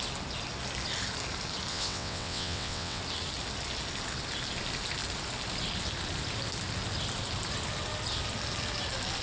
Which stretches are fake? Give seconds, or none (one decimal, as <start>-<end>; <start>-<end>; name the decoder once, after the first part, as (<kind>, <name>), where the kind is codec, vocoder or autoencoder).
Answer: 1.7-3.0 (vocoder, WaveNeXt)